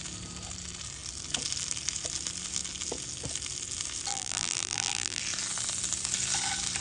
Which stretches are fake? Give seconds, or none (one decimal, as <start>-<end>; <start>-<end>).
4.1-5.2